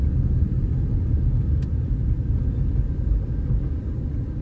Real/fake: real